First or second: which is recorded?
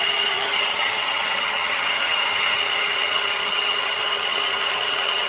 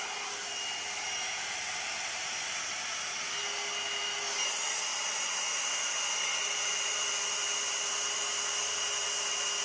second